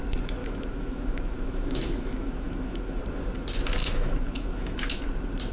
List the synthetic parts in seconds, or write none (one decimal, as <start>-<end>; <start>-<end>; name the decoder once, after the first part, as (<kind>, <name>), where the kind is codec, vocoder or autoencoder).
0.4-3.0 (autoencoder, DAC-VAE); 3.8-5.0